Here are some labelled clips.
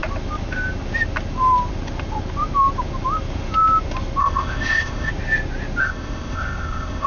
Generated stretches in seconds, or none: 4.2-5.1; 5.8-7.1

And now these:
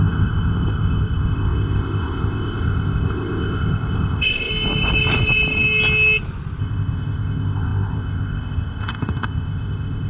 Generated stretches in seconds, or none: 0.0-4.5; 6.6-10.1

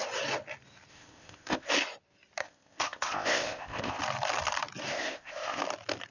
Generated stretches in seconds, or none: 0.9-1.7; 2.4-4.0; 4.9-5.6

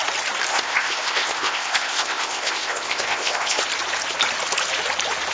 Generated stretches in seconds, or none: 0.5-3.6